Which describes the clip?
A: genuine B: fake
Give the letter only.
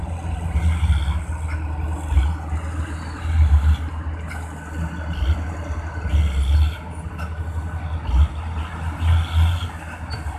A